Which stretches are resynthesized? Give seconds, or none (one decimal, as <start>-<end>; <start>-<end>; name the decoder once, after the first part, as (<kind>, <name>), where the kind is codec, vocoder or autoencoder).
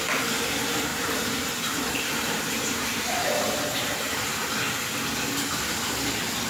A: 0.9-4.8 (vocoder, BigVGAN v2)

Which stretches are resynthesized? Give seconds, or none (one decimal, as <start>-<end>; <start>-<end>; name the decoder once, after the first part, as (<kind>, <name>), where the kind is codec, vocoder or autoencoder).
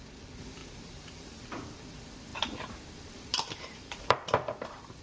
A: 0.6-1.4 (vocoder, BigVGAN v2); 2.3-2.8; 3.3-5.0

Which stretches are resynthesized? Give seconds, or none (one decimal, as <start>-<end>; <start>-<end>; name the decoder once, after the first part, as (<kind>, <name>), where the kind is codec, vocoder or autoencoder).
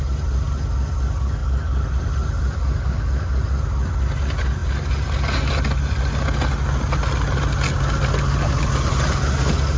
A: 1.4-3.5 (vocoder, BigVGAN v2)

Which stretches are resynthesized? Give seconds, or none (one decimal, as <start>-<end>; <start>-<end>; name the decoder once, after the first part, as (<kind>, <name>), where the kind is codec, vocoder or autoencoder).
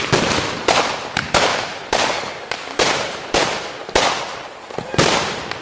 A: 1.5-3.4 (vocoder, BigVGAN v2)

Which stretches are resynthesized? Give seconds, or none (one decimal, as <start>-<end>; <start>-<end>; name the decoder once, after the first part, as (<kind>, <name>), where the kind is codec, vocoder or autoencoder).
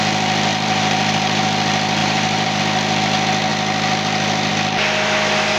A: 0.5-1.4 (vocoder, BigVGAN v2); 2.0-2.6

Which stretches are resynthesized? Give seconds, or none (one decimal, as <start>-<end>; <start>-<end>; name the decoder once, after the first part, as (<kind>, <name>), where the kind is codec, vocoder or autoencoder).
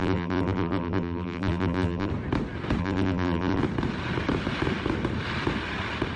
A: 0.0-2.1 (vocoder, BigVGAN v2); 2.8-3.6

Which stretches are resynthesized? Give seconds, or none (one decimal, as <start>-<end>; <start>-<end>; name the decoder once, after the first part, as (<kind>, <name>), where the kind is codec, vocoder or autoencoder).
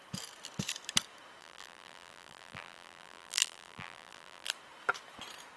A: 1.4-4.5 (vocoder, BigVGAN v2)